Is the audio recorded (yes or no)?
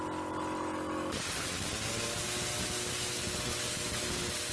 yes